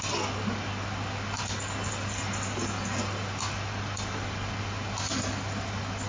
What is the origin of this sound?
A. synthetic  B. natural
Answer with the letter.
B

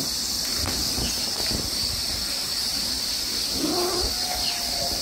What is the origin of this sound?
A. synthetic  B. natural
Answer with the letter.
B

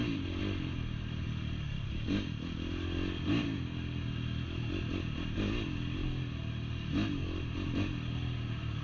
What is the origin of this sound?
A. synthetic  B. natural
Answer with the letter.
B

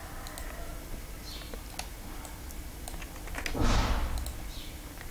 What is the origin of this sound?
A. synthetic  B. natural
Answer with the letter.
B